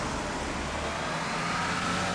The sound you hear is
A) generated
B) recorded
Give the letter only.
B